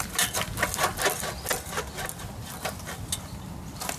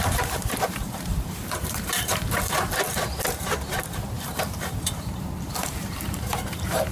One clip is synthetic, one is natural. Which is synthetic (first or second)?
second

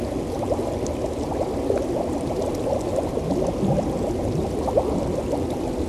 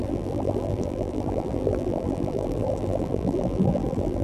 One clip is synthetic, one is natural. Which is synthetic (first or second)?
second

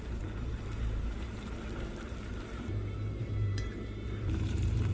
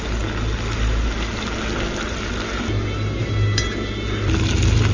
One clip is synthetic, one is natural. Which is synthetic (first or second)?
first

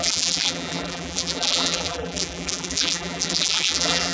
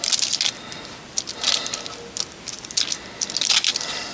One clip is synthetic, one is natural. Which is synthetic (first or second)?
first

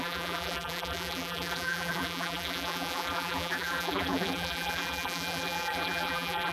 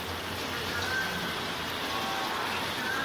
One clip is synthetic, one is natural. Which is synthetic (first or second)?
first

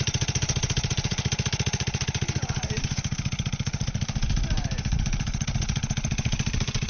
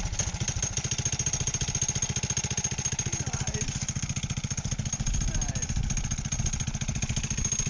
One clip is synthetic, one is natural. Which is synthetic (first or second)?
first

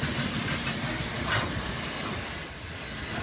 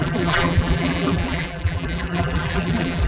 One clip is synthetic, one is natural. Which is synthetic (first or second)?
second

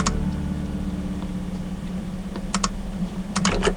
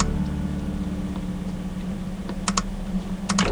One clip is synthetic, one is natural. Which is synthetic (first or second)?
first